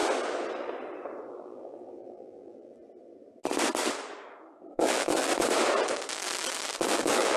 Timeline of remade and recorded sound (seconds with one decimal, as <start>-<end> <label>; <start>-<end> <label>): 0.0-1.3 recorded; 1.3-2.8 remade; 2.8-4.7 recorded; 4.7-5.3 remade; 5.3-6.7 recorded; 6.7-7.4 remade